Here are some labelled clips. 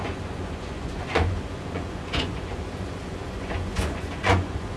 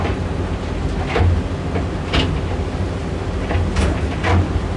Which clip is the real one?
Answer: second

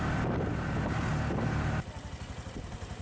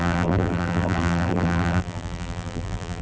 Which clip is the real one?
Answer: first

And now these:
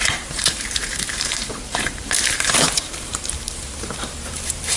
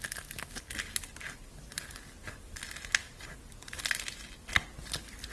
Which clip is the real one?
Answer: second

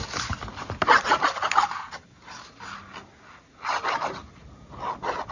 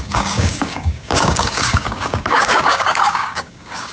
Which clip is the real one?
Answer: first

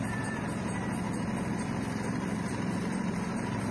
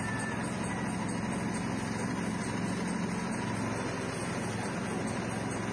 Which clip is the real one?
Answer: second